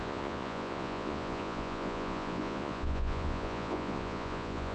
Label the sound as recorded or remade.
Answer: remade